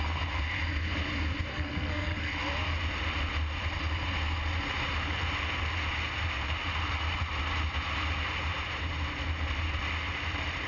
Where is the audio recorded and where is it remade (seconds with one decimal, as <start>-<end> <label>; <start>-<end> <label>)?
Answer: 0.0-1.5 recorded; 1.5-2.3 remade; 2.3-10.7 recorded